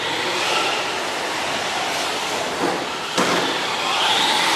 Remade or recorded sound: recorded